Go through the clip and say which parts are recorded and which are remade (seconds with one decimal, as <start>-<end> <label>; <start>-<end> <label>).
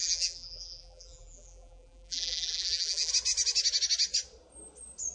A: 0.0-3.1 remade; 3.1-5.1 recorded